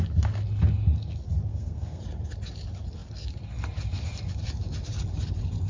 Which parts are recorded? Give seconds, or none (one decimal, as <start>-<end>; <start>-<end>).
0.0-1.5; 2.0-5.7